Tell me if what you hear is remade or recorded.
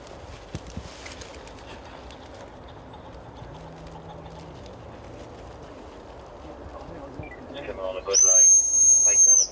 recorded